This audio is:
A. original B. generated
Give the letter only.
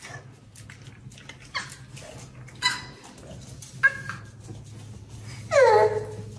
A